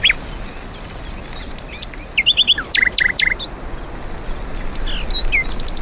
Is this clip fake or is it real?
real